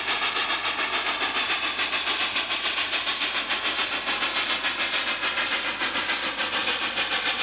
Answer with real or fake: real